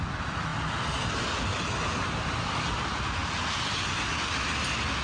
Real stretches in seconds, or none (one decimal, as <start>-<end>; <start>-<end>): 0.0-5.0